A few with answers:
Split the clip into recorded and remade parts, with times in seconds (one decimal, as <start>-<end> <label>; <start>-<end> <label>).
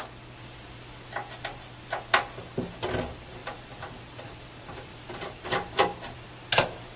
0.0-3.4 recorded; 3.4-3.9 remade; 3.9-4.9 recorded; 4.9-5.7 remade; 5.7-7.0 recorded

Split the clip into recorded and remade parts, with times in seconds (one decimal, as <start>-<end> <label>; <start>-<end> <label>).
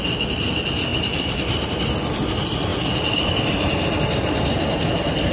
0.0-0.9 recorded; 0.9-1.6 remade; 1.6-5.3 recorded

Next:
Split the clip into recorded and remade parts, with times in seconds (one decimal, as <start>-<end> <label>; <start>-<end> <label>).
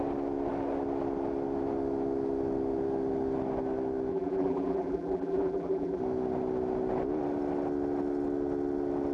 0.0-4.1 recorded; 4.1-6.0 remade; 6.0-9.1 recorded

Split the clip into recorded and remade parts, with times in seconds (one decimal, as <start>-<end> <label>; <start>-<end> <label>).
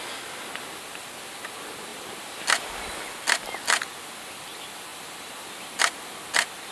0.0-1.9 recorded; 1.9-2.8 remade; 2.8-4.9 recorded; 4.9-6.0 remade; 6.0-6.7 recorded